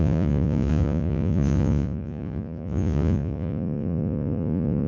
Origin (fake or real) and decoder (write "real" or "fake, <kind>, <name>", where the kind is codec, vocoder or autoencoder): fake, vocoder, Vocos